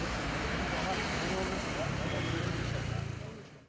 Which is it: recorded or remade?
recorded